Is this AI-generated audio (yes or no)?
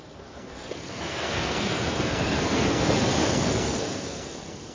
yes